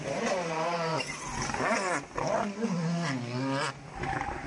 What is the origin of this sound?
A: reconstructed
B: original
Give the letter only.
B